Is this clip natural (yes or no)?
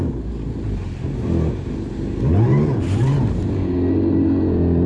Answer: yes